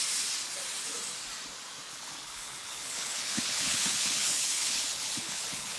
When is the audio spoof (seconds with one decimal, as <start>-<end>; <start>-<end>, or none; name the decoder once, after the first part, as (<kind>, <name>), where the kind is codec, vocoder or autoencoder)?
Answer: 1.9-5.8 (codec, HILCodec)

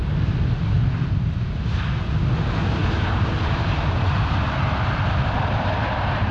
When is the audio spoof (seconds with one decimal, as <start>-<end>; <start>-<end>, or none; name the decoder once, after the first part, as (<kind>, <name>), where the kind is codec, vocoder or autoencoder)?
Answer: none

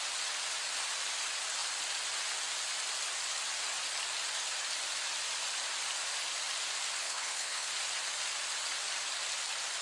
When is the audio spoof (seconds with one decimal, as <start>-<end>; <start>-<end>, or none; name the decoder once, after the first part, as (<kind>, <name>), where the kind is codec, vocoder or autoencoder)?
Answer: 7.0-7.7 (codec, HILCodec)

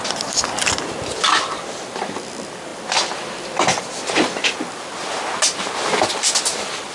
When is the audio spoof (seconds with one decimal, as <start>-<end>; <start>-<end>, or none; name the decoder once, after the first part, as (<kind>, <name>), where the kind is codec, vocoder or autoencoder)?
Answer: none

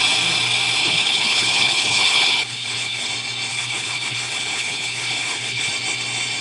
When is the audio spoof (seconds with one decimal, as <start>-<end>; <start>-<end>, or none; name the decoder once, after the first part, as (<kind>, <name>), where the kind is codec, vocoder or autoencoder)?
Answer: 0.8-3.1 (codec, HILCodec); 3.5-5.7